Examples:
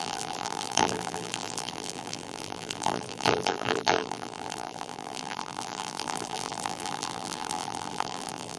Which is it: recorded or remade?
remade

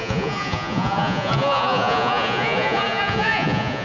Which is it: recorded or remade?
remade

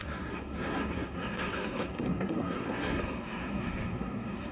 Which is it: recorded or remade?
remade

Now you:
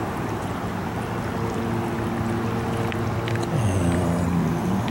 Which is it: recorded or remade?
recorded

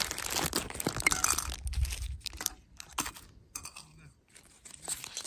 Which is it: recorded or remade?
recorded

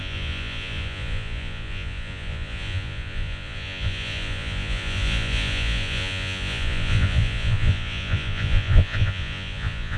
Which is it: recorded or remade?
remade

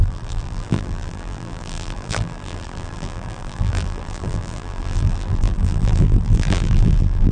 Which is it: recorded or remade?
remade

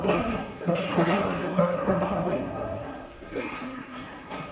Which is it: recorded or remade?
remade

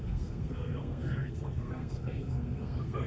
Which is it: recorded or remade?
remade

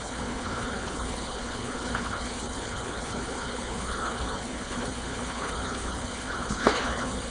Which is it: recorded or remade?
remade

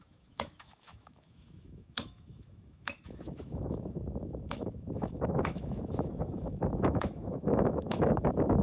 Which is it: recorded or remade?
remade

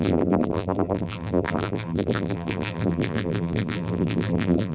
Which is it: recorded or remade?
remade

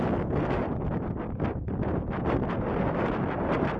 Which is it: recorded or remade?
recorded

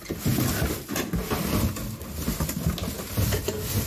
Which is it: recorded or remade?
recorded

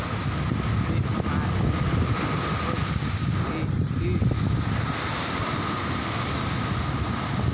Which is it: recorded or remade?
recorded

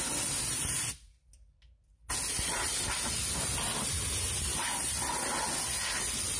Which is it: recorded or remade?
recorded